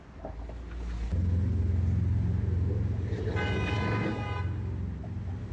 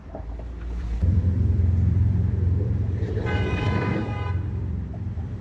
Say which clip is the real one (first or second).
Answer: first